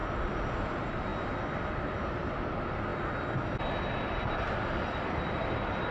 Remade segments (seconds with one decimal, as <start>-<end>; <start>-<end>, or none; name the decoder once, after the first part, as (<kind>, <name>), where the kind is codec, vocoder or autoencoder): 0.0-1.1 (vocoder, BigVGAN v2); 2.3-2.9; 3.9-5.9